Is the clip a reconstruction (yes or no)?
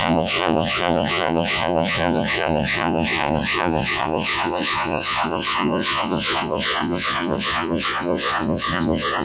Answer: yes